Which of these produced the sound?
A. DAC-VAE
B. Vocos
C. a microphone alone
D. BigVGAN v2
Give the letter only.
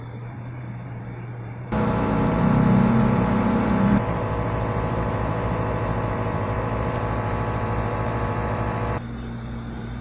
D